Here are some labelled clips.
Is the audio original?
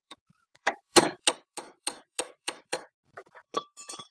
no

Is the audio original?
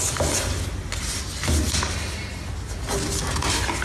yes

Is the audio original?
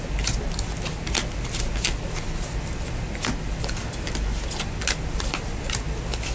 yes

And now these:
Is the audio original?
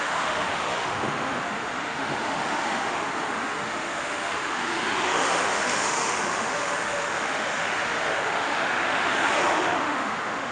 no